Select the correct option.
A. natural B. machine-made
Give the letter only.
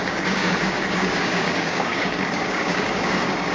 B